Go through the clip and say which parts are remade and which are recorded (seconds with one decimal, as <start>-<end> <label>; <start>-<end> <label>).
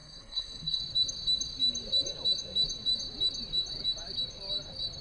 0.0-0.8 remade; 0.8-5.0 recorded